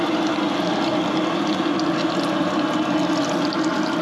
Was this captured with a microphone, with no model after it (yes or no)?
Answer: yes